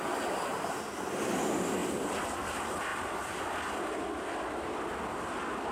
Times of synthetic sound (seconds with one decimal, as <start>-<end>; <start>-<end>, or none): 0.5-1.0; 1.8-2.4; 2.9-4.1